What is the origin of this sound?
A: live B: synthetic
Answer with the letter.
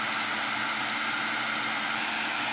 A